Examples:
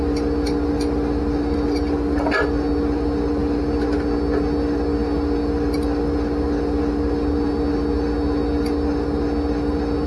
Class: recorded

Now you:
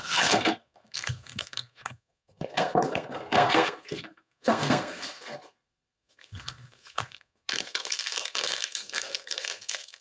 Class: remade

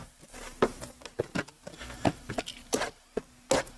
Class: recorded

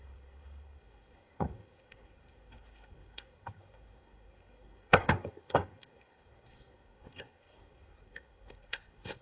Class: remade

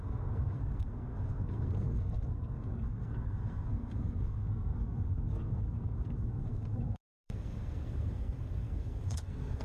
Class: remade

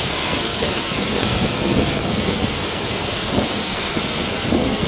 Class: remade